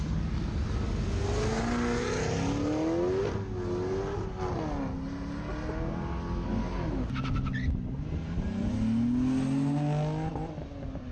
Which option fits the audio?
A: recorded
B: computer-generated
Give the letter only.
A